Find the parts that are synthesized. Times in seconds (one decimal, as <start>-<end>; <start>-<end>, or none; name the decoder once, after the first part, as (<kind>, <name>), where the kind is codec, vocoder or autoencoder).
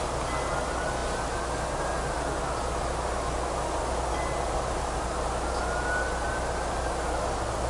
none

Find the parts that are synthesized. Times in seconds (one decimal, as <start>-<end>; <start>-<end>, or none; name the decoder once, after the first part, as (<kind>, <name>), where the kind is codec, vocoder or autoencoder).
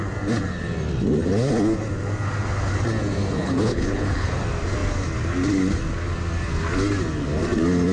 3.4-4.3 (codec, HILCodec)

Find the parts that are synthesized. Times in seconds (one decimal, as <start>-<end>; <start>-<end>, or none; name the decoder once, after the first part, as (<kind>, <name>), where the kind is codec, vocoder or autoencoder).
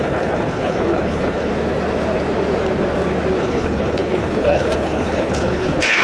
0.0-1.5 (codec, HILCodec); 3.4-6.0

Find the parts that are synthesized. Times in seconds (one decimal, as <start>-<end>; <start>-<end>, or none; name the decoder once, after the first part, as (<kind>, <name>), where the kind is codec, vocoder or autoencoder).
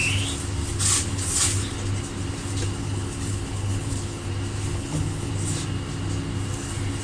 2.8-4.3 (codec, HILCodec); 4.7-5.3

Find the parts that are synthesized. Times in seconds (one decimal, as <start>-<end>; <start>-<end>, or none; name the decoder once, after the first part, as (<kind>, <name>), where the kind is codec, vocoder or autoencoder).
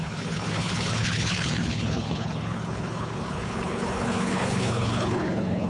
0.0-5.7 (codec, HILCodec)